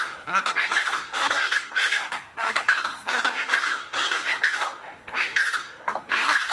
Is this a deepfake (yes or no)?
yes